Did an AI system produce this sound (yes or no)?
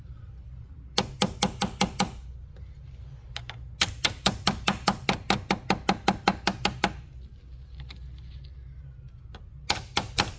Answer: no